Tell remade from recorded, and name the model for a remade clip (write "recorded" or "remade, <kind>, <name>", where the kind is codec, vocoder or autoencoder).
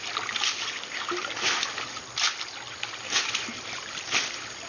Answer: recorded